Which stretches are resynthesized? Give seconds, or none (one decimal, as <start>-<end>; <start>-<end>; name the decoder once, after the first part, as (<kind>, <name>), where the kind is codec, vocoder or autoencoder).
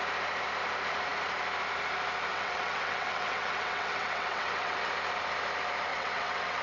2.3-4.9 (vocoder, WaveNeXt); 5.9-6.6